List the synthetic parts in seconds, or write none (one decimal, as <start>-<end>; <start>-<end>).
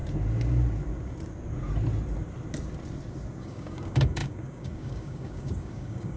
3.4-6.2